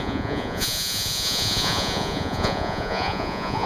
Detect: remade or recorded remade